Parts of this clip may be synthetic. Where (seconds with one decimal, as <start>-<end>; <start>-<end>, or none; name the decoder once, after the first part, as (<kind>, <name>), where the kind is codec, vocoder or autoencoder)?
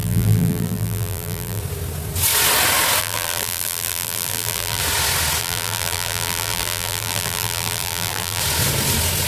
0.0-1.6 (vocoder, BigVGAN v2); 3.0-4.8; 5.4-8.4